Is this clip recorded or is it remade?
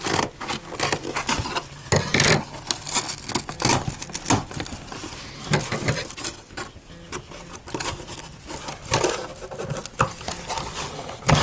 recorded